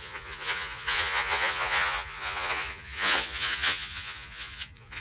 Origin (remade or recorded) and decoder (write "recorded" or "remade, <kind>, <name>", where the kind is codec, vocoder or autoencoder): remade, vocoder, Vocos